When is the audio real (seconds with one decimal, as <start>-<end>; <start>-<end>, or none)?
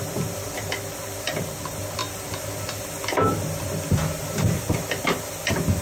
0.0-5.8